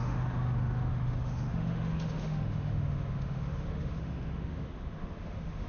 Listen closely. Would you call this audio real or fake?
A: fake